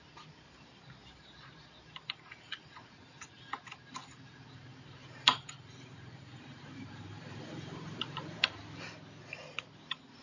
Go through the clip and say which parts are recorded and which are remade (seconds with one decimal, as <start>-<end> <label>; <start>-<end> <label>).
0.0-1.0 recorded; 1.0-1.6 remade; 1.6-4.7 recorded; 4.7-8.6 remade; 8.6-10.2 recorded